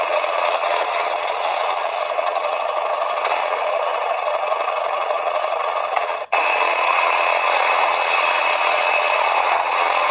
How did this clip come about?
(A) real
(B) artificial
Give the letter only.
B